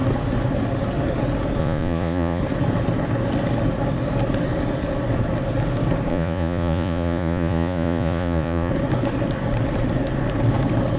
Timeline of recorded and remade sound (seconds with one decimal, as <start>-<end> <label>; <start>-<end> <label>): 0.0-1.6 recorded; 1.6-2.4 remade; 2.4-6.1 recorded; 6.1-8.7 remade; 8.7-11.0 recorded